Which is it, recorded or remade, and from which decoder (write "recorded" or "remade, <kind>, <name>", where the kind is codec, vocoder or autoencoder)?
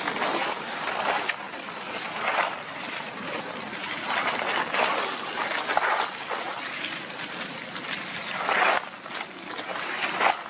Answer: recorded